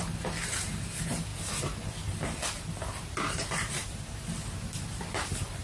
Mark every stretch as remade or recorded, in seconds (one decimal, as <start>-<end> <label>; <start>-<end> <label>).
0.0-1.3 remade; 1.3-3.3 recorded; 3.3-3.8 remade; 3.8-5.1 recorded; 5.1-5.6 remade